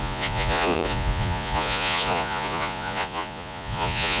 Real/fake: fake